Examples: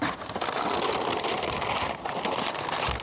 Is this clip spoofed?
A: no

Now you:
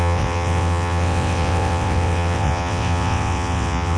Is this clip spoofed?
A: yes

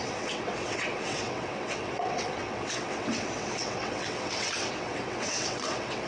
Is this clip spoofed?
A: yes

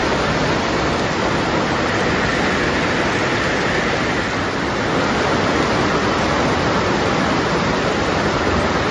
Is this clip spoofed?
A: no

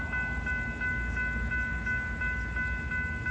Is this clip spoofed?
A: no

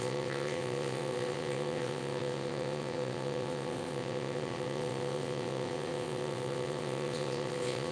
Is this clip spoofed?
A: yes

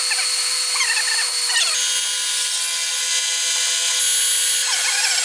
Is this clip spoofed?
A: no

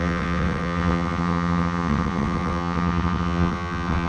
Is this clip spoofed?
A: yes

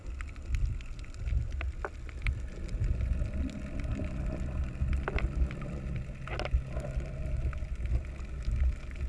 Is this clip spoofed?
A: no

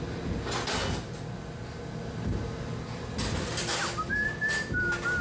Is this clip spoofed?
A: no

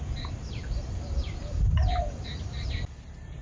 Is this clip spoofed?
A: no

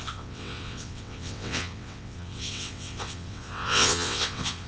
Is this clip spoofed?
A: yes